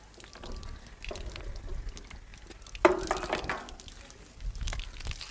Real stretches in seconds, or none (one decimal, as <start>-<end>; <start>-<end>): 0.0-5.3